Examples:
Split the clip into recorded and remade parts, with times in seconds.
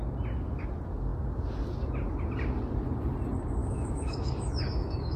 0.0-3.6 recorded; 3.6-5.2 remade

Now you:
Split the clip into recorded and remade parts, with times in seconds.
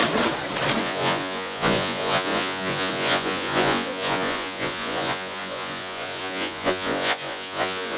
0.0-0.8 recorded; 0.8-8.0 remade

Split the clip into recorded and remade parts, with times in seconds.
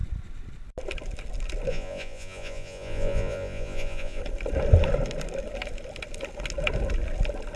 0.0-1.7 recorded; 1.7-4.2 remade; 4.2-7.6 recorded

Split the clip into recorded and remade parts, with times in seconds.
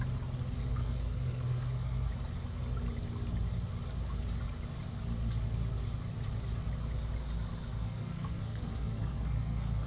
0.0-0.8 recorded; 0.8-2.1 remade; 2.1-7.8 recorded; 7.8-9.9 remade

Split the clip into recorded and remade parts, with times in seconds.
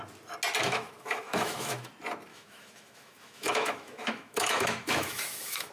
0.0-0.6 recorded; 0.6-1.9 remade; 1.9-2.3 recorded; 2.3-5.7 remade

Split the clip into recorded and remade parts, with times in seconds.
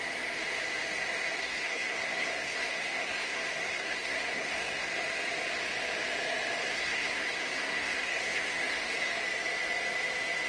0.0-1.4 recorded; 1.4-4.9 remade; 4.9-6.6 recorded; 6.6-9.1 remade; 9.1-10.5 recorded